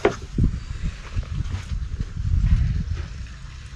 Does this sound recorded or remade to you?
recorded